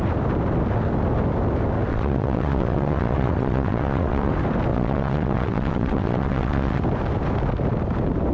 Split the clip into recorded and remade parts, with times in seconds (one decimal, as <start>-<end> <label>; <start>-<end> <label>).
0.0-1.9 recorded; 1.9-4.3 remade; 4.3-4.7 recorded; 4.7-6.8 remade; 6.8-8.3 recorded